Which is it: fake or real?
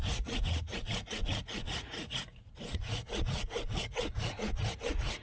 fake